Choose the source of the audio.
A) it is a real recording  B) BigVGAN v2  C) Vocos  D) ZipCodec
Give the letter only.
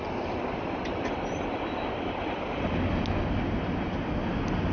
A